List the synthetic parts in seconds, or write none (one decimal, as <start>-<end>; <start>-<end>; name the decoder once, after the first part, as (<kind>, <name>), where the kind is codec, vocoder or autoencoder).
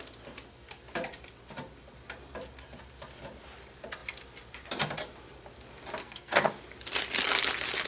6.0-6.5 (codec, SNAC)